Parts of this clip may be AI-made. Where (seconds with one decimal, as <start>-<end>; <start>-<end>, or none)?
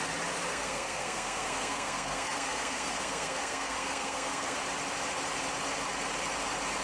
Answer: 0.5-4.6